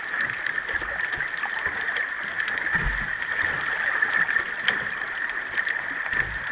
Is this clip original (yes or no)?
yes